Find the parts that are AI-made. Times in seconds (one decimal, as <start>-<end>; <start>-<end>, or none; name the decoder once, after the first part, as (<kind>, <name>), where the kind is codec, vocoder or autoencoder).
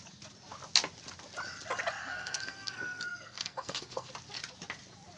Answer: 2.0-4.1 (codec, SNAC)